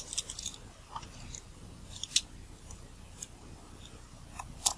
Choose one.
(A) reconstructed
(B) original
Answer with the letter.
B